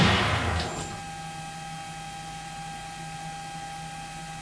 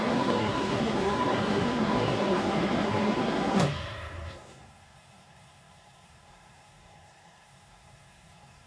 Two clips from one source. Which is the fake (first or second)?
second